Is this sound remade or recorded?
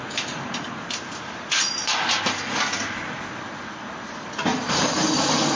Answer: recorded